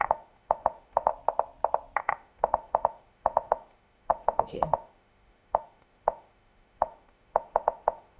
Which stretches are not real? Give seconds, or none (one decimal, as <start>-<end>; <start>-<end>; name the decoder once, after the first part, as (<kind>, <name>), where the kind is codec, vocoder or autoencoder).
0.0-1.1 (autoencoder, DAC-VAE); 2.0-8.2

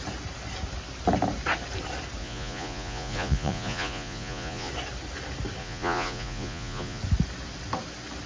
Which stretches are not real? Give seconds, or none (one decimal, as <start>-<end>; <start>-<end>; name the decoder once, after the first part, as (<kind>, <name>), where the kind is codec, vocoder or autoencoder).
2.2-4.7 (vocoder, Vocos); 5.6-7.0

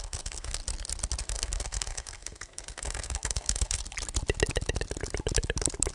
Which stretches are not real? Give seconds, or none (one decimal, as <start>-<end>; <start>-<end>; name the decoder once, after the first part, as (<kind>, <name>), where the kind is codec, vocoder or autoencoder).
0.0-0.6 (codec, SNAC); 1.2-3.8